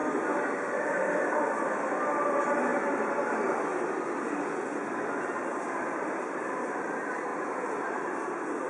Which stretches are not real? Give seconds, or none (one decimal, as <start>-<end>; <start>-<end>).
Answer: 0.9-2.7; 5.2-7.3